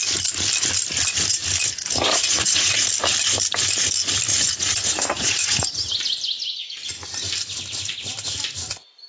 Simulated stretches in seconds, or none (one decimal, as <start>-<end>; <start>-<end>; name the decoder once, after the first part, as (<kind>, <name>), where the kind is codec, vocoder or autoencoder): 1.8-2.7 (vocoder, Vocos); 4.3-5.9